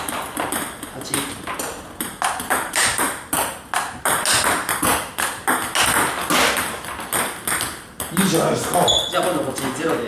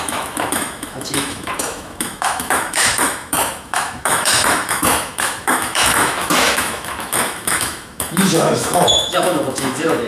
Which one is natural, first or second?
first